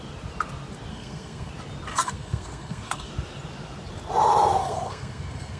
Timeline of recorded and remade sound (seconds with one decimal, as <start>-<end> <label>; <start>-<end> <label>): 0.0-0.9 recorded; 0.9-1.5 remade; 1.5-1.9 recorded; 1.9-3.1 remade; 3.1-4.6 recorded; 4.6-5.6 remade